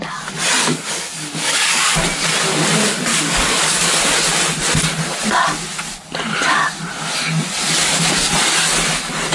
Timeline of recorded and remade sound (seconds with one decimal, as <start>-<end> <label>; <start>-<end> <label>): 0.0-0.6 recorded; 0.6-1.9 remade; 1.9-3.1 recorded; 3.1-4.0 remade; 4.0-7.8 recorded; 7.8-8.3 remade; 8.3-9.3 recorded